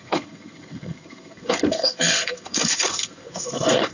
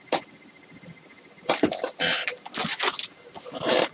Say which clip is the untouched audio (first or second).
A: second